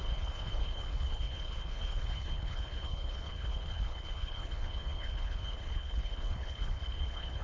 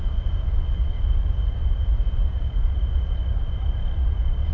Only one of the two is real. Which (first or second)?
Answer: second